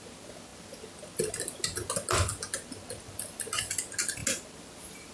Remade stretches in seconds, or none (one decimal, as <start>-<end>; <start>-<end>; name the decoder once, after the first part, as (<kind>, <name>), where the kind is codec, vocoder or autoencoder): none